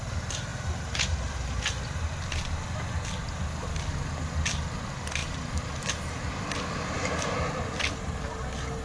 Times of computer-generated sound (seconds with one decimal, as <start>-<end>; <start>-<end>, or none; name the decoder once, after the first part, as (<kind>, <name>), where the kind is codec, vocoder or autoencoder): 0.5-1.6 (vocoder, BigVGAN v2); 5.2-7.5